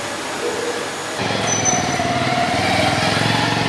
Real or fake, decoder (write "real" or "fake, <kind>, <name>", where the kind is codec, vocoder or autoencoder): real